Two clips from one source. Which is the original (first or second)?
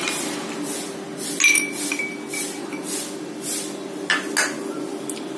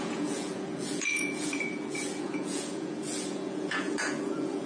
first